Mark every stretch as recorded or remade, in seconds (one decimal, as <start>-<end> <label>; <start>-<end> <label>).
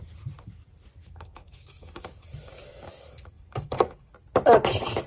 0.0-1.0 recorded; 1.0-4.1 remade; 4.1-5.1 recorded